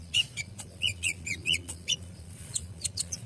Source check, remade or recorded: remade